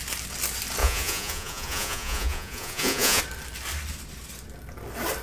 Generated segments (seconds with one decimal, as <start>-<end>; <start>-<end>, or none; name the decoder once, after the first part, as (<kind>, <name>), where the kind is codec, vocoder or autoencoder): 0.8-3.2 (vocoder, Vocos)